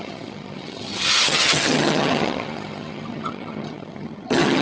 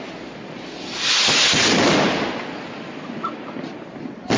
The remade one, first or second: first